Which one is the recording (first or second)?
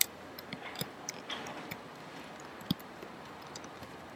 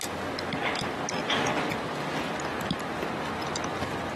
second